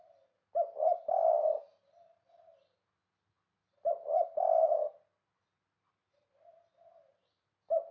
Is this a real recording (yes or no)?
yes